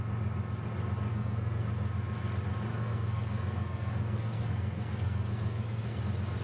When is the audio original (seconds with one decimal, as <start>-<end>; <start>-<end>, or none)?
0.0-1.1; 1.7-2.7; 6.0-6.4